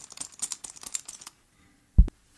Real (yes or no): yes